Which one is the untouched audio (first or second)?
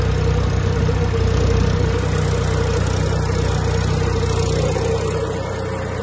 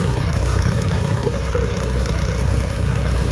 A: first